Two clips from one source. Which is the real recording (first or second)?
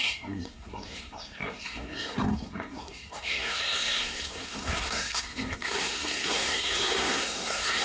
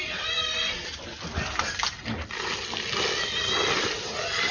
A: second